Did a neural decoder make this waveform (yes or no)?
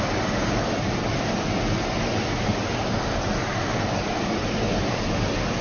no